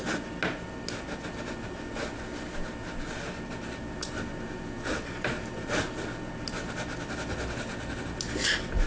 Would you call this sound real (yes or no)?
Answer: yes